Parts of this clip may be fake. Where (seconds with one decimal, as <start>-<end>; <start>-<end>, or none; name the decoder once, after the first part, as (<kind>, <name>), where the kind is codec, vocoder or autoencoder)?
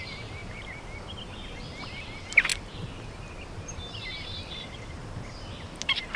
none